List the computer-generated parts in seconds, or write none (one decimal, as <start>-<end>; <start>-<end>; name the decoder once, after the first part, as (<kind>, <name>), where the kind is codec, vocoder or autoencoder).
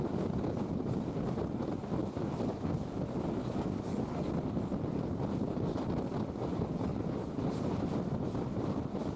2.0-4.3 (codec, DAC)